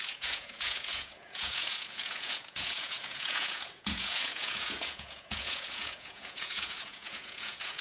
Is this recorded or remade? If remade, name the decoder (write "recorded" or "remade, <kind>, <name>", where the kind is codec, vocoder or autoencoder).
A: remade, vocoder, Vocos